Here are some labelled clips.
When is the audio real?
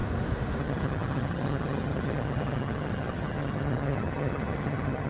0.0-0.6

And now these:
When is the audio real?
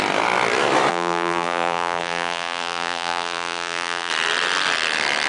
0.0-0.9; 4.1-5.3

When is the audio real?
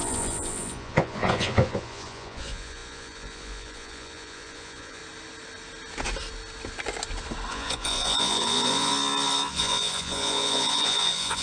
5.0-7.5; 8.9-9.5